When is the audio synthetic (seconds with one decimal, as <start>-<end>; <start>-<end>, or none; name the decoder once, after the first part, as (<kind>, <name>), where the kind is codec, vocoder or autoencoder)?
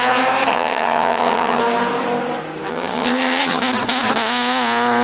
0.5-1.6 (vocoder, HiFi-GAN); 2.7-3.6